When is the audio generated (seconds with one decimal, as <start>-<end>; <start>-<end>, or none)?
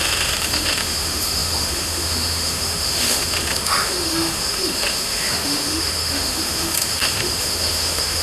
0.0-8.2